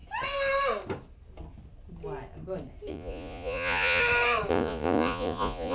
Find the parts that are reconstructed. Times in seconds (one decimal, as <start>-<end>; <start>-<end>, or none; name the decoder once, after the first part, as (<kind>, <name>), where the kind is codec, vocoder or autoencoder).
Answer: 2.9-4.0 (vocoder, Vocos); 4.5-5.7